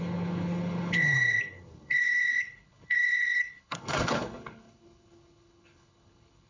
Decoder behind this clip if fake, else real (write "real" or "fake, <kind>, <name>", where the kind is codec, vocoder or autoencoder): fake, codec, HILCodec